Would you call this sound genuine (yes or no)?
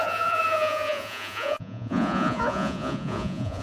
no